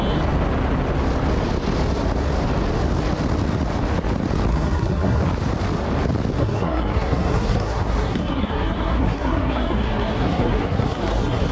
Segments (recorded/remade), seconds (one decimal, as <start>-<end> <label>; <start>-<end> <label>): 0.0-4.5 recorded; 4.5-5.2 remade; 5.2-6.4 recorded; 6.4-11.5 remade